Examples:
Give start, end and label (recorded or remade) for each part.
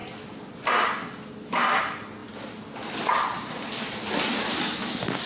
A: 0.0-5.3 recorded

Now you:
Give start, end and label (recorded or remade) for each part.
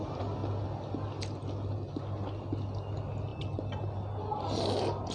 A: 0.0-5.1 recorded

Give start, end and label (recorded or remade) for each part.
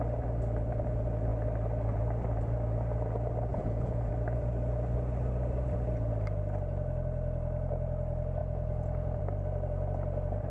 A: 0.0-3.5 recorded; 3.5-4.1 remade; 4.1-8.4 recorded; 8.4-9.2 remade; 9.2-10.5 recorded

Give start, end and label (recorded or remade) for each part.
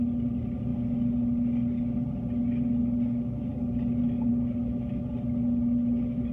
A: 0.0-6.3 recorded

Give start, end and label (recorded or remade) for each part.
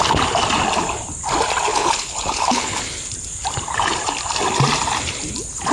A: 0.0-1.7 recorded; 1.7-2.8 remade; 2.8-5.7 recorded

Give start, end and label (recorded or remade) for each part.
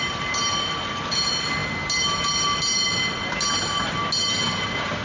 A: 0.0-5.0 recorded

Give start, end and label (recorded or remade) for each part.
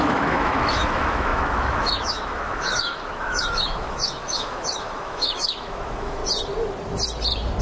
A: 0.0-6.2 remade; 6.2-7.6 recorded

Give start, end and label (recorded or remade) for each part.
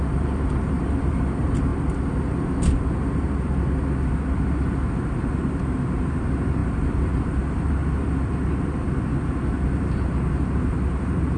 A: 0.0-1.7 remade; 1.7-4.6 recorded; 4.6-7.8 remade; 7.8-9.7 recorded; 9.7-11.4 remade